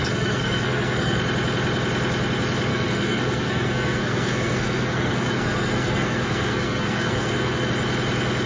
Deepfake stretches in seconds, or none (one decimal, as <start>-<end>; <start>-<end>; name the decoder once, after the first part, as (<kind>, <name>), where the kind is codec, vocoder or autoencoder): 0.0-1.2 (codec, SNAC); 2.7-7.7